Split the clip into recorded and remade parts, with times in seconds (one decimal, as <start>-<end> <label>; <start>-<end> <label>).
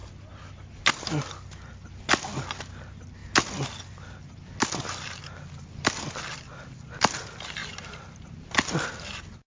0.0-9.6 recorded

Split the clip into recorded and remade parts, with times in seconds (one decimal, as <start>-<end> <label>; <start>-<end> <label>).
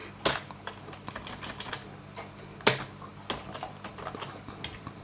0.0-5.0 recorded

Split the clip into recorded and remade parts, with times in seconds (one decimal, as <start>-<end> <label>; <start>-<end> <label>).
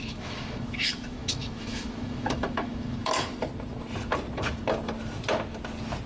0.0-3.3 remade; 3.3-6.1 recorded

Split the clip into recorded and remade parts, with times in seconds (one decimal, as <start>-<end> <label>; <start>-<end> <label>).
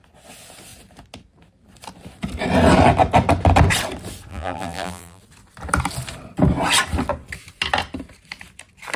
0.0-4.3 recorded; 4.3-5.2 remade; 5.2-9.0 recorded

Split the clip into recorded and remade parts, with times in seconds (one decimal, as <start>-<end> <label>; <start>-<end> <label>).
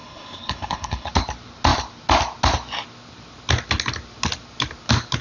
0.0-1.1 remade; 1.1-5.2 recorded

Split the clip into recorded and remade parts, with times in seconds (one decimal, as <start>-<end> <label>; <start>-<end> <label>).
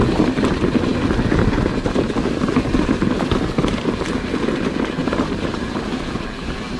0.0-5.0 recorded; 5.0-5.6 remade; 5.6-6.8 recorded